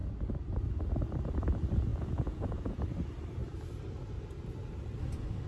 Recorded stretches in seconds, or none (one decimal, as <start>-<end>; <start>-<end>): 0.0-1.9; 2.8-5.5